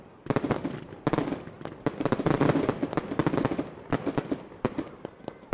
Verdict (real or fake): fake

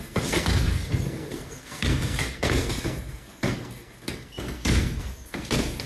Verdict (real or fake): fake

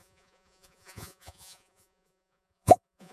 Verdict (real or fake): fake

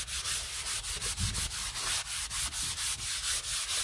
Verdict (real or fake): real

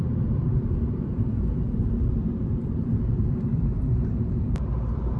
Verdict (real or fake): fake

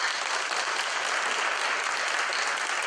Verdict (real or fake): real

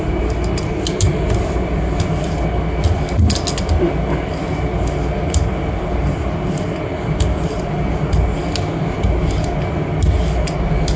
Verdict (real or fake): real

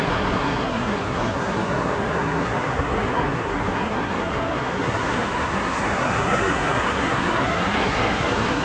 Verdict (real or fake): fake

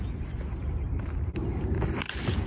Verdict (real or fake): fake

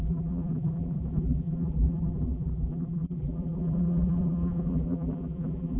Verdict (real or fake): fake